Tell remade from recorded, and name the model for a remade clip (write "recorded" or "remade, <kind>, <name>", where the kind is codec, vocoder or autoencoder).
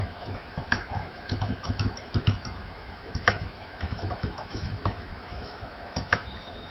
remade, autoencoder, DAC-VAE